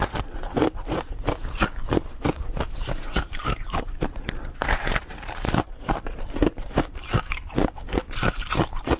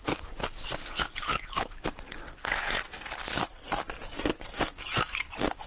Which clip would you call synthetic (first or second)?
first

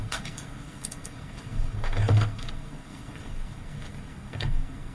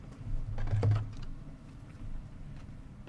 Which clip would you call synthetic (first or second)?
first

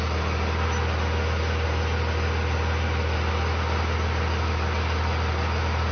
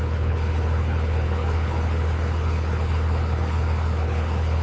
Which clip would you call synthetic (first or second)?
second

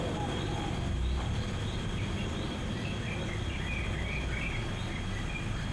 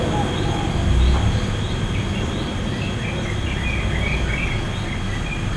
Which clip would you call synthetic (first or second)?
first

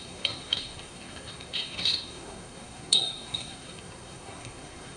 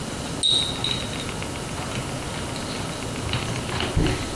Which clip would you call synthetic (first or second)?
first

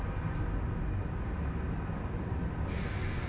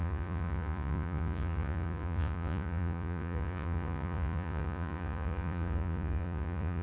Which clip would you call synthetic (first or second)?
second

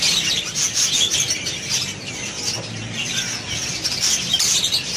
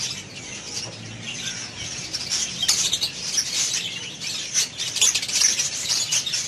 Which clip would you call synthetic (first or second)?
second